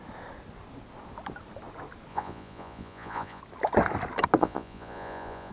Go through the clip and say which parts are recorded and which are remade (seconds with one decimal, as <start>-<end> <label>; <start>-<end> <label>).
0.0-2.1 recorded; 2.1-3.4 remade; 3.4-4.4 recorded; 4.4-5.5 remade